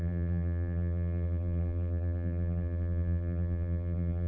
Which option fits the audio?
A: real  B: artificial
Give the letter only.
B